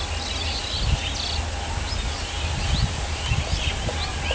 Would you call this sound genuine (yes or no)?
yes